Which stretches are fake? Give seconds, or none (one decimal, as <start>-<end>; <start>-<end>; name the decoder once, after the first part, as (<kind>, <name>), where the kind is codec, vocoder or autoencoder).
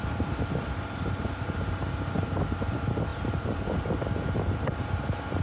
none